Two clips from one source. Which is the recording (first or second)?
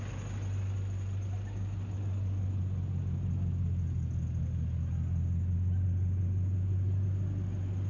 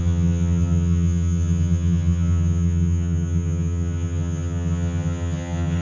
first